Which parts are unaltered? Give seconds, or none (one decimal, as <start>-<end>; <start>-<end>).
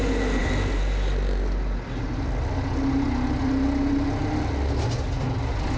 0.0-5.8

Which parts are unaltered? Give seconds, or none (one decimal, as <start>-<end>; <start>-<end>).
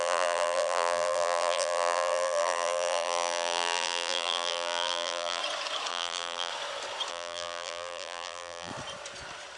5.4-5.9; 6.5-7.1; 8.7-9.6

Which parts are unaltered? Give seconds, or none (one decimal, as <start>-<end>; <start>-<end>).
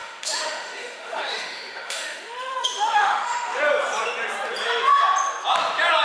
3.6-6.0